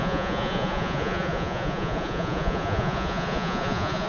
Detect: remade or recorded remade